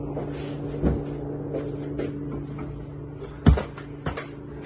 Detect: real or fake real